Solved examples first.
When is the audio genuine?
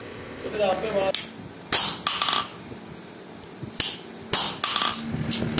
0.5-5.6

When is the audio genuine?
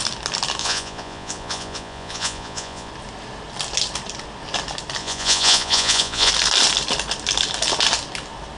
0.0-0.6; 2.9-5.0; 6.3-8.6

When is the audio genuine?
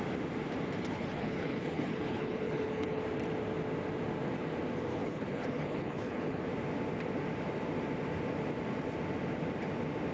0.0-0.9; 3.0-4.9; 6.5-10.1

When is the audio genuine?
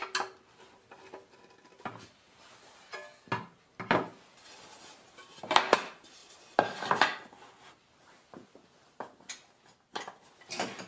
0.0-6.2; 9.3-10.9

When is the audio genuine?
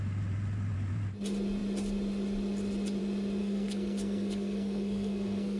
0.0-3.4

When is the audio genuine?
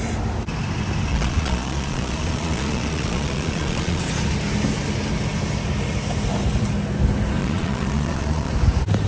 0.0-1.1; 4.0-7.4; 8.5-9.1